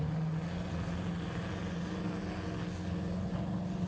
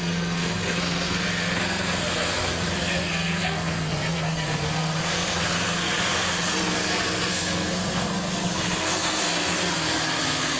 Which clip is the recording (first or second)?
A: first